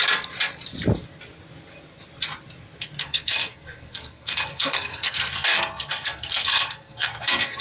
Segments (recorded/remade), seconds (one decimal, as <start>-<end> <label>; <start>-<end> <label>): 0.0-3.0 recorded; 3.0-7.6 remade